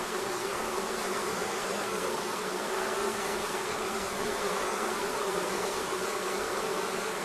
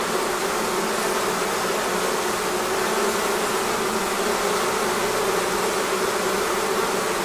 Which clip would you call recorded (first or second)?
second